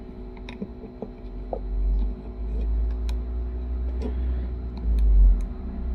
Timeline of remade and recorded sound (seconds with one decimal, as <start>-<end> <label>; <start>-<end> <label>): 0.0-5.9 recorded